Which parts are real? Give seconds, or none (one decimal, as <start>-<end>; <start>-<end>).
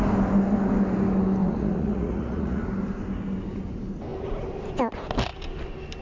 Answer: 0.0-1.4; 2.6-6.0